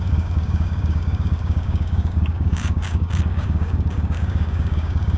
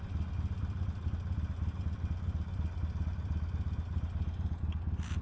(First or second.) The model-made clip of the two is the first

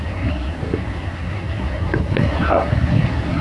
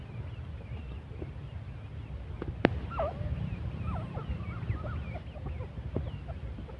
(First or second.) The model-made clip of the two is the first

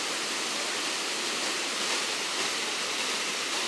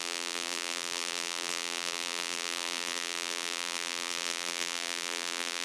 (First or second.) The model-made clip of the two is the second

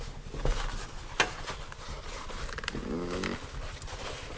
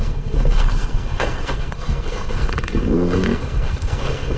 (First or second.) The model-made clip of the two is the second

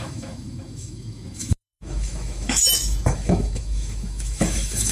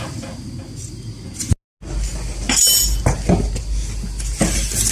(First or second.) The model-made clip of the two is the first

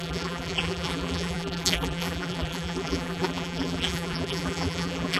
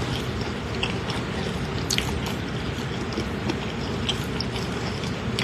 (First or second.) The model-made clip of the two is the first